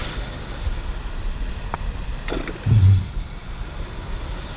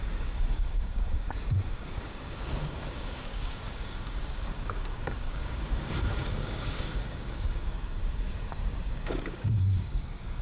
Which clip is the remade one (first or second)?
second